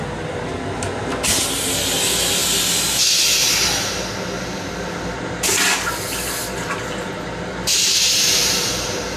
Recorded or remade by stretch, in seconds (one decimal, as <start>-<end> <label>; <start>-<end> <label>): 0.0-7.6 recorded; 7.6-9.2 remade